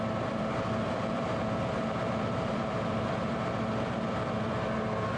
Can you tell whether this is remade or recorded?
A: remade